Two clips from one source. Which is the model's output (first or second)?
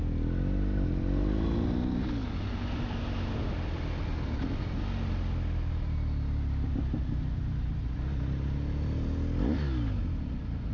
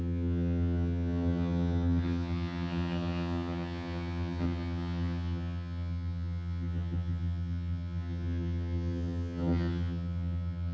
second